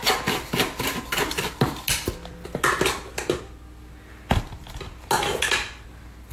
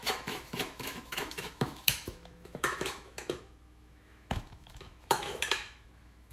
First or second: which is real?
first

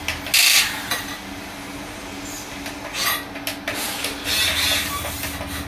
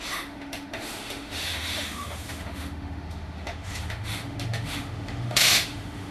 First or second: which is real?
first